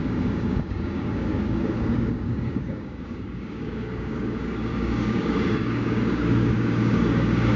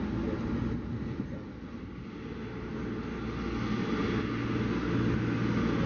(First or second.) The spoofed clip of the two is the first